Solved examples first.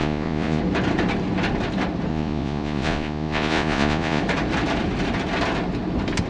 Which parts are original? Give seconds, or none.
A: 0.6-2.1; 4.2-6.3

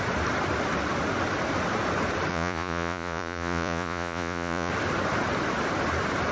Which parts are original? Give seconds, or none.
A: 0.0-2.3; 4.7-6.3

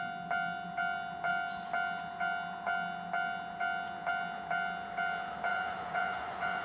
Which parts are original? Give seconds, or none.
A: 0.0-5.5

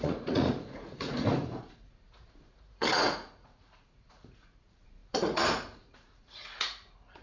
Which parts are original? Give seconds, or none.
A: none

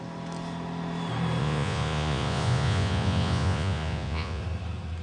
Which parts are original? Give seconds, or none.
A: 0.0-1.4; 4.4-5.0

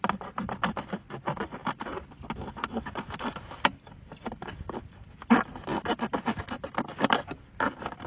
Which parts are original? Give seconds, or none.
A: 0.0-8.1

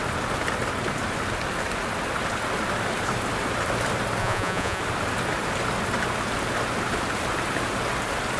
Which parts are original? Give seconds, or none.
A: 0.0-4.2; 4.8-8.4

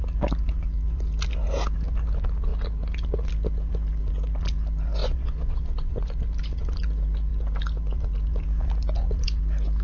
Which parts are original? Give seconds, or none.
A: 0.0-5.0; 6.2-9.8